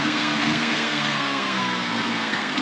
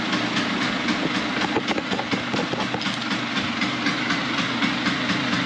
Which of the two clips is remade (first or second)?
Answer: first